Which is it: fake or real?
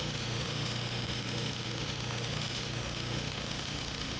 fake